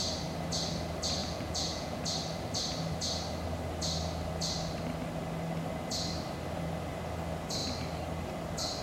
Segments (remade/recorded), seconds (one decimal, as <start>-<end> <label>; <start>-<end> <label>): 0.0-1.2 recorded; 1.2-2.0 remade; 2.0-8.8 recorded